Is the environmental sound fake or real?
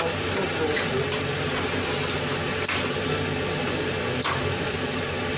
real